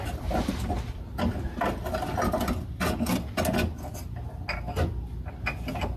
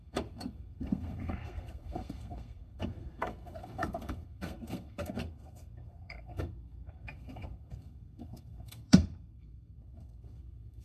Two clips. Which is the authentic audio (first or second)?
first